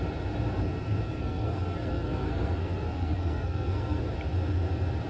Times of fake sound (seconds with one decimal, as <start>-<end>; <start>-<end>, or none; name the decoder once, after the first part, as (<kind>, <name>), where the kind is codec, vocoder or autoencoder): 1.1-4.1 (codec, SNAC)